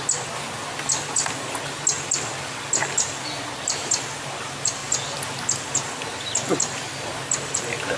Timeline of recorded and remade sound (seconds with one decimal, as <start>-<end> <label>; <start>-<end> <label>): 0.0-8.0 recorded